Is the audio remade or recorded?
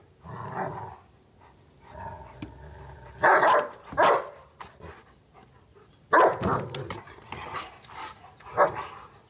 recorded